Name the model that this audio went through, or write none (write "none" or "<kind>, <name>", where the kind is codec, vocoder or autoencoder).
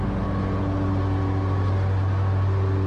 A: none